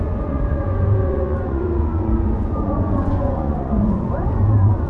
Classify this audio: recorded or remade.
remade